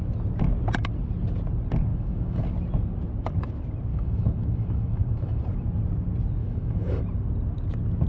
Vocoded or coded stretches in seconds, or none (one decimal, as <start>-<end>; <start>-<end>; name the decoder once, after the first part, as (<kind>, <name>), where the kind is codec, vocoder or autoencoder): 1.9-2.4 (autoencoder, DAC-VAE); 3.9-5.4; 6.4-7.0